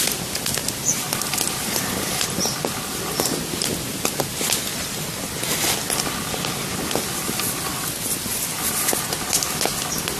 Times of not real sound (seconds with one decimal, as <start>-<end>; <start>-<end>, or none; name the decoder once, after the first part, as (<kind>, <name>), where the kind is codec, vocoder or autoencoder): none